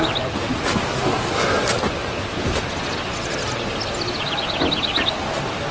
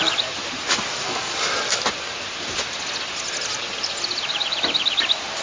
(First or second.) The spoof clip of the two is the second